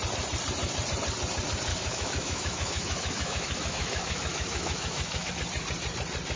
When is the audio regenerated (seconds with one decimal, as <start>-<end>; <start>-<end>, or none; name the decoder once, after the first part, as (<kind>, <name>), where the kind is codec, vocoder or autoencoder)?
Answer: 1.7-5.3 (autoencoder, DAC-VAE)